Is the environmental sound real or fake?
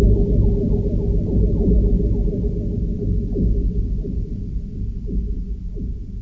real